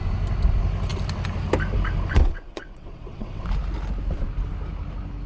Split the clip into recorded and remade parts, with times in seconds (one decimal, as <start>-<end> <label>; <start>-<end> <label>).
0.0-2.1 recorded; 2.1-3.4 remade; 3.4-5.3 recorded